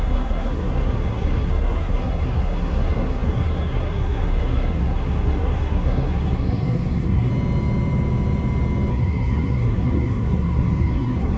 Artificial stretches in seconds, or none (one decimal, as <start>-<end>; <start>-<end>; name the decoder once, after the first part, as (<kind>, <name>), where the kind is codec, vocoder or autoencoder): 0.0-7.3 (codec, SNAC); 8.9-11.4